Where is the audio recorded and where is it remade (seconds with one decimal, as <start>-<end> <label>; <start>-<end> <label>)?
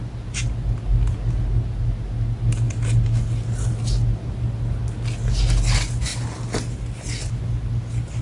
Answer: 0.0-8.2 recorded